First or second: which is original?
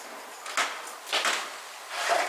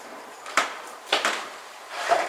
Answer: first